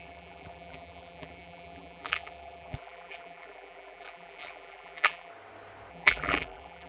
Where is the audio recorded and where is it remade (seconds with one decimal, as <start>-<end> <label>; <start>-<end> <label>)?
0.0-5.3 remade; 5.3-5.9 recorded; 5.9-6.9 remade